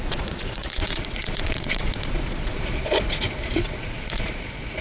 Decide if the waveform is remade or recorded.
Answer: remade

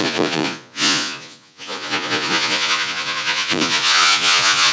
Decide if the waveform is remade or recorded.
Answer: remade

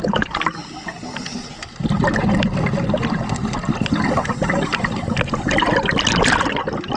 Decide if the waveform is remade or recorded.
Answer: recorded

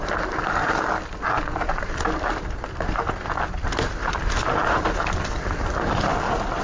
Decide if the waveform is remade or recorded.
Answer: recorded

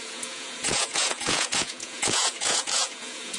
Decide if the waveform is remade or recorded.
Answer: remade